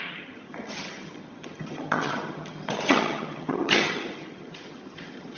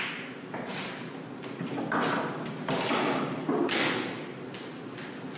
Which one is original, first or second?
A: second